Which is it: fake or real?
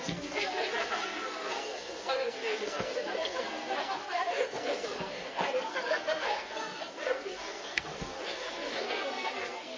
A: fake